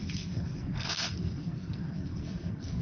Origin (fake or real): fake